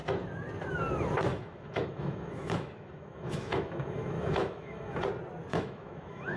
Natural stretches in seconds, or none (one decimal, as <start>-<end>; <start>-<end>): 0.0-1.3; 5.0-5.5